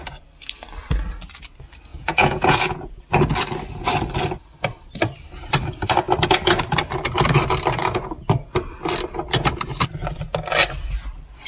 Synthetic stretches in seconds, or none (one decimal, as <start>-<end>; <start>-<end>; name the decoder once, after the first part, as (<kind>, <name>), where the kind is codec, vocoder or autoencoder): 1.9-3.0 (vocoder, Vocos)